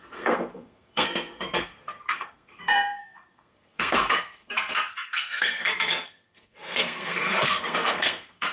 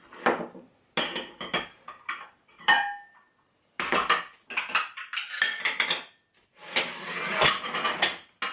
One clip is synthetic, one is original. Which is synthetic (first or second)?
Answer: first